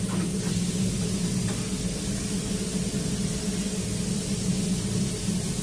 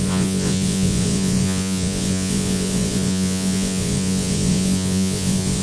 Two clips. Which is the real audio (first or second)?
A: first